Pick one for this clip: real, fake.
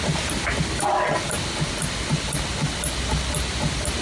real